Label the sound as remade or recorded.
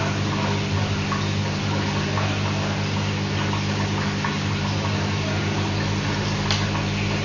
recorded